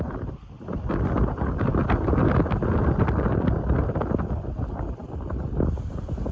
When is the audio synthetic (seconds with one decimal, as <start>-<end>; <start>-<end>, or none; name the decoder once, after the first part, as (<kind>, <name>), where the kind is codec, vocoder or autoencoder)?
none